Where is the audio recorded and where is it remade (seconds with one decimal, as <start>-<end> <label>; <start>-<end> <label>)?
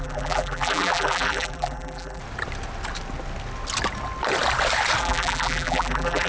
0.0-2.2 remade; 2.2-5.0 recorded; 5.0-6.3 remade